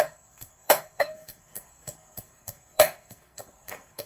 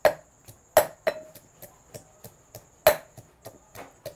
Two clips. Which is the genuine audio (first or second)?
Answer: second